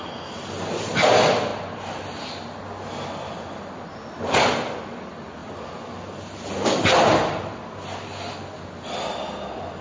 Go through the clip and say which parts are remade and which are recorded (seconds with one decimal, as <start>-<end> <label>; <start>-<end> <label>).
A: 0.0-9.8 recorded